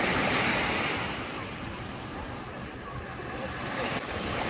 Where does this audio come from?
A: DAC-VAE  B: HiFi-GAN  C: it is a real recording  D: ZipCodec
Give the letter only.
C